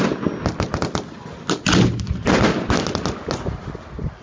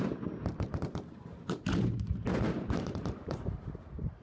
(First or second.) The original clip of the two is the first